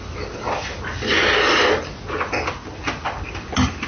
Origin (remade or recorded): recorded